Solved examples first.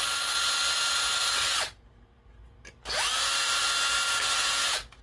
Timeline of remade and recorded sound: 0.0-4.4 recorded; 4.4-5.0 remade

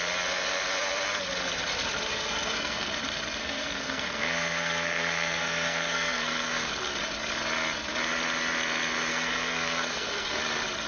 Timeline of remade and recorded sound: 0.0-2.1 recorded; 2.1-2.9 remade; 2.9-3.4 recorded; 3.4-6.9 remade; 6.9-9.1 recorded; 9.1-10.4 remade; 10.4-10.9 recorded